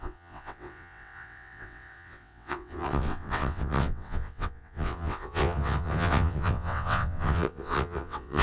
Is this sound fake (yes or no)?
yes